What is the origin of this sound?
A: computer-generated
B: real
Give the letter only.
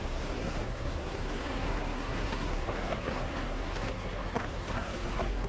A